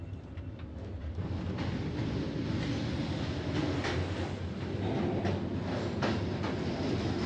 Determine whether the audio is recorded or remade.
recorded